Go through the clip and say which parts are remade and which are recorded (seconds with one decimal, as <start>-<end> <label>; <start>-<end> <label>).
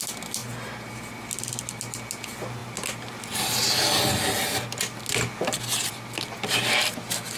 0.0-7.4 recorded